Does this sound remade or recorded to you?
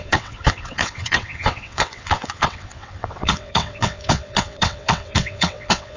remade